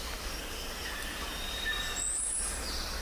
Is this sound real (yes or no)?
yes